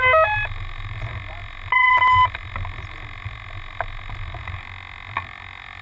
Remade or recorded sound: recorded